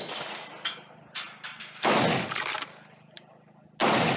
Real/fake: real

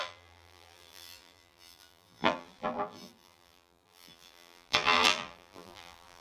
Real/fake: fake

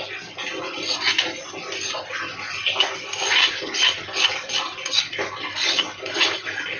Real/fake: real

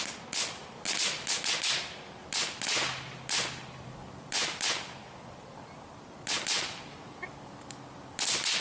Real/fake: real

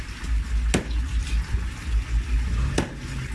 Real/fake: real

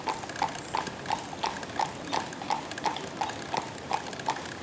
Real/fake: real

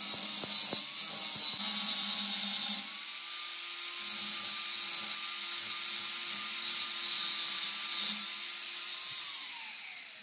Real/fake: real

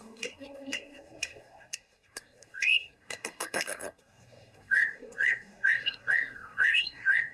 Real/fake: fake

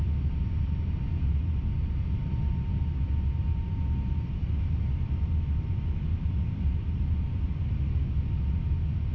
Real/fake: real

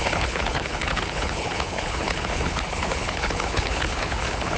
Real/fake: fake